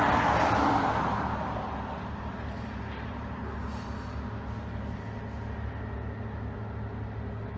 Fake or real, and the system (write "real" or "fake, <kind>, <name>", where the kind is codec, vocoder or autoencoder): real